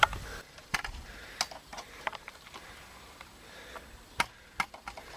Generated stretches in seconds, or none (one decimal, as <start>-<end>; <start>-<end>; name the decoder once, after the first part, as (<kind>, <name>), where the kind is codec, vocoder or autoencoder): 0.0-1.1 (vocoder, BigVGAN v2); 1.7-2.3